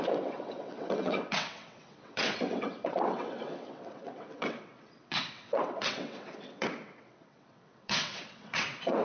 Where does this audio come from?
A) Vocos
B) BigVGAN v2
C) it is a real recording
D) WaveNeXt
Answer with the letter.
D